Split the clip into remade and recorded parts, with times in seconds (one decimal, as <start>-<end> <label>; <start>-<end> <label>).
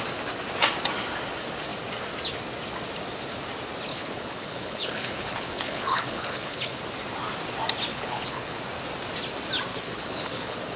0.0-3.9 recorded; 3.9-6.8 remade; 6.8-7.9 recorded; 7.9-8.6 remade; 8.6-9.7 recorded; 9.7-10.8 remade